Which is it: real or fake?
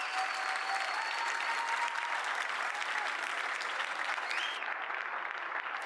real